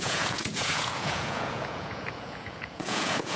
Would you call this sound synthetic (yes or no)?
yes